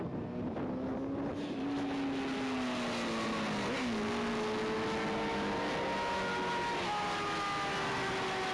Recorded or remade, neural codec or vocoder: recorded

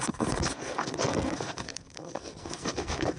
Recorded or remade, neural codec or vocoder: remade, codec, SNAC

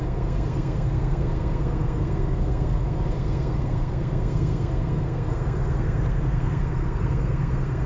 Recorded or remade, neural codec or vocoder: remade, codec, SNAC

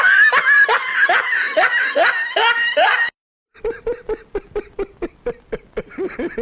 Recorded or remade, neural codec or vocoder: recorded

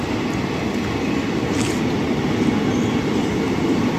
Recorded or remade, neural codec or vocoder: recorded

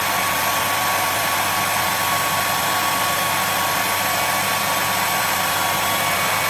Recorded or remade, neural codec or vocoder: recorded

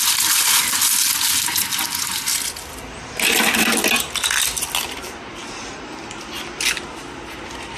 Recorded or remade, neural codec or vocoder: recorded